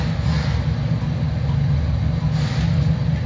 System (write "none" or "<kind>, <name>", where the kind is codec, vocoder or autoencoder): none